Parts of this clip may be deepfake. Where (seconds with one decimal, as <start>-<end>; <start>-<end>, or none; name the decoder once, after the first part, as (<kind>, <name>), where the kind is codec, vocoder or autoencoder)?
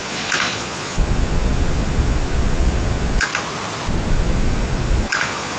0.0-3.3 (vocoder, Vocos); 4.1-5.6